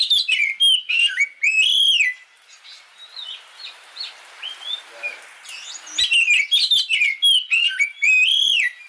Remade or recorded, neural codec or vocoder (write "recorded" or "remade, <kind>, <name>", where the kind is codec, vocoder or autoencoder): recorded